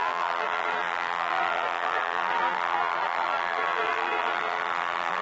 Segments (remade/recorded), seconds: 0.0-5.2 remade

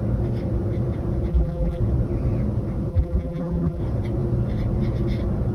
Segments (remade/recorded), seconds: 0.0-1.3 recorded; 1.3-1.8 remade; 1.8-2.9 recorded; 2.9-3.8 remade; 3.8-5.5 recorded

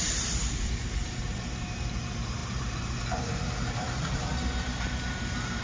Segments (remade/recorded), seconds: 0.0-5.6 remade

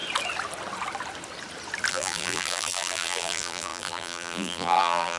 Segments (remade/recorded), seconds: 0.0-1.9 recorded; 1.9-5.2 remade

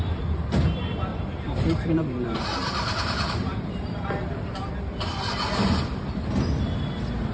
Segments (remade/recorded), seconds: 0.0-1.1 recorded; 1.1-4.7 remade; 4.7-7.3 recorded

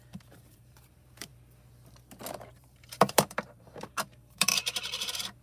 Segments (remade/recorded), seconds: 0.0-1.3 remade; 1.3-2.5 recorded; 2.5-5.4 remade